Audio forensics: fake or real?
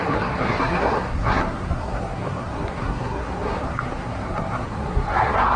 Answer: fake